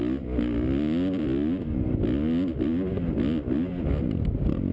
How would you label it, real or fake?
real